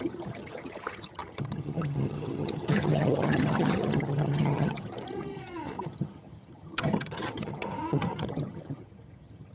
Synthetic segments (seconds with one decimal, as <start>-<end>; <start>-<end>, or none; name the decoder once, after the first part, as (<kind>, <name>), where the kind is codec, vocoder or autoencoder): 0.0-9.5 (vocoder, HiFi-GAN)